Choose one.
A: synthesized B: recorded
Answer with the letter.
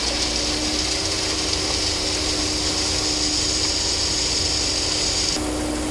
B